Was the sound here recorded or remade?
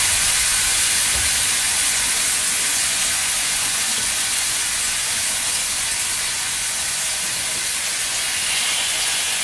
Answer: remade